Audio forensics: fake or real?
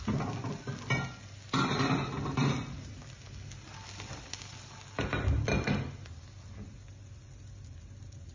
real